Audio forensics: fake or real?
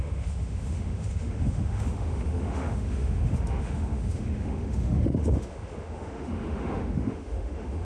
fake